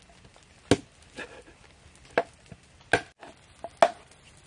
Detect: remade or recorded recorded